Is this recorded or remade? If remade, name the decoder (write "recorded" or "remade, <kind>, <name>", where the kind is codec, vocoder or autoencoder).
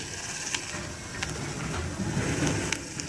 recorded